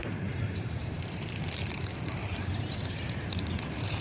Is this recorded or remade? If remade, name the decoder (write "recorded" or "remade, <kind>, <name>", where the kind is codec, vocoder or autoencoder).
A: remade, vocoder, BigVGAN v2